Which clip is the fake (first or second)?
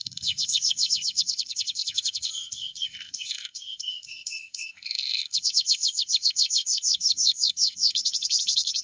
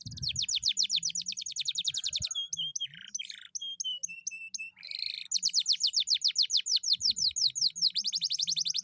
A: first